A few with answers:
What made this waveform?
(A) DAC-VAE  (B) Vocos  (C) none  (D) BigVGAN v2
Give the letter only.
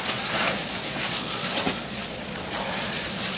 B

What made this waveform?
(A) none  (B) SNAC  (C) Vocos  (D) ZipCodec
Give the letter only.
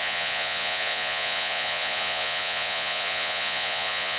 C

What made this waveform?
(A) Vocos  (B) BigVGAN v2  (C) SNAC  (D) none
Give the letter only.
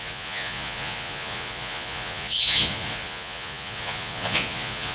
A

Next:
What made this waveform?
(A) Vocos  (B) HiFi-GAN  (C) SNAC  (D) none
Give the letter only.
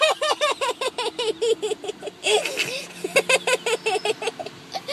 D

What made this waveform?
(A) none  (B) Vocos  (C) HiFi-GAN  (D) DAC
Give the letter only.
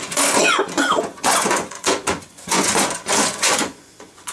B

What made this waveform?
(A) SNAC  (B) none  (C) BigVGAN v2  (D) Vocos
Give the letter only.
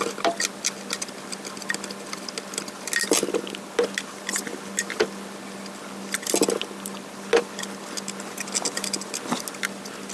B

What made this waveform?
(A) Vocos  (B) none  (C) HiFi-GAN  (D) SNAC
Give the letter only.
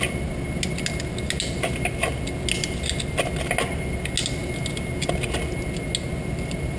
B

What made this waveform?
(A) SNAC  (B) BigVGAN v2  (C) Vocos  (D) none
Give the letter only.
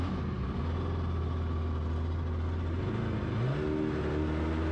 D